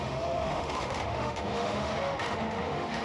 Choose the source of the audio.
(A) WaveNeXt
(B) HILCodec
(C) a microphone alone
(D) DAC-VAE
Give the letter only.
D